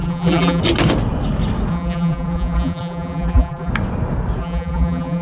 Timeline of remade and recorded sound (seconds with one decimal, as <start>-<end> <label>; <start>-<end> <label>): 0.0-0.6 remade; 0.6-1.7 recorded; 1.7-3.7 remade; 3.7-4.4 recorded; 4.4-5.2 remade